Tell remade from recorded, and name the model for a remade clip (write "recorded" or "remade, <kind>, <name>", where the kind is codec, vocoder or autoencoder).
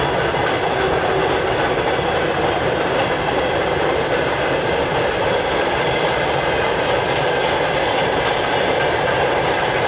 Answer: recorded